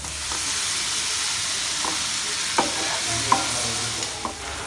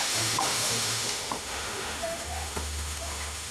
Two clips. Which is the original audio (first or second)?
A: first